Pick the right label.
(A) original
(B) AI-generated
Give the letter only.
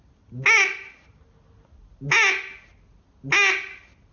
A